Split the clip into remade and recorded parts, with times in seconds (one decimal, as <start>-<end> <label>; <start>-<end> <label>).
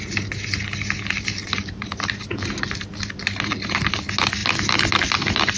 0.0-1.4 recorded; 1.4-2.5 remade; 2.5-3.2 recorded; 3.2-3.9 remade; 3.9-5.6 recorded